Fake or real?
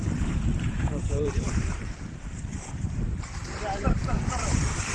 fake